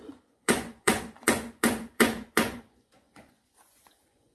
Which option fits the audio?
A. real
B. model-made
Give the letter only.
B